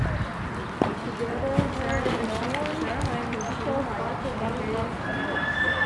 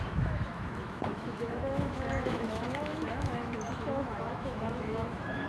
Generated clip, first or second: second